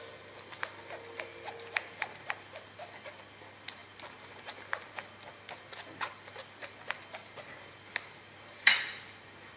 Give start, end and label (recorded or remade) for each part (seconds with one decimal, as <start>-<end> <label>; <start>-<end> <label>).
0.0-9.6 recorded